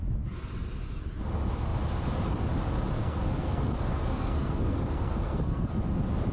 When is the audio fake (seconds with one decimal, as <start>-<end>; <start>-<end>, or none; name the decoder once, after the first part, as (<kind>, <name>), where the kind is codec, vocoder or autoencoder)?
3.0-5.7 (codec, SNAC)